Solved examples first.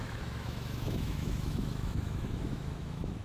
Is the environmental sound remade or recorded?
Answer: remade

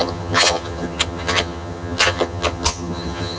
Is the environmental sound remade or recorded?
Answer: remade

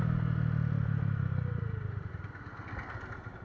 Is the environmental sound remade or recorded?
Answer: recorded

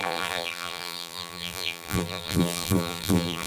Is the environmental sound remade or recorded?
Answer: remade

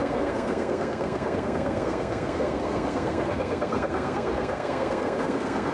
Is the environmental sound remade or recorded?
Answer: remade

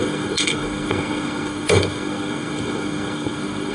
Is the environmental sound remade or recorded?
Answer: remade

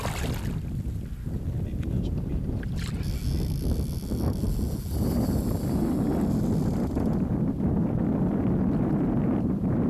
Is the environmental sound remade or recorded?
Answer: recorded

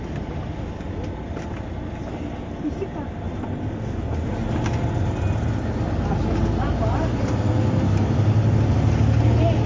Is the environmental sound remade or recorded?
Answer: recorded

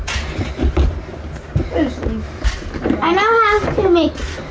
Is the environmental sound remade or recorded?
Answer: recorded